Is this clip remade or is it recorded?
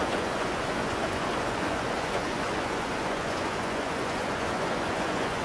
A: remade